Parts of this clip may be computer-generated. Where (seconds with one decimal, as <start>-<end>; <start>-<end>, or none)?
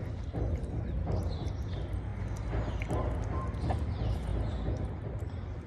none